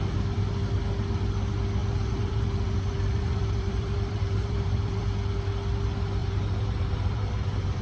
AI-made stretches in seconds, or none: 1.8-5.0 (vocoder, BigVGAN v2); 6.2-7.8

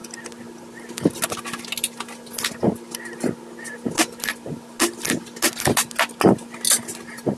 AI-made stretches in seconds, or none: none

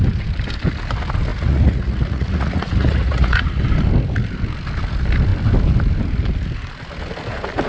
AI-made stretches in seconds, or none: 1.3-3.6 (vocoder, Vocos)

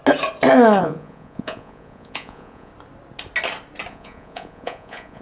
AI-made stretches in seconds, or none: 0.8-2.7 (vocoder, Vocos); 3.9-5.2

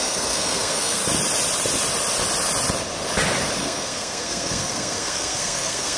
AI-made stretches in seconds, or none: 0.0-1.0 (codec, SNAC); 3.6-6.0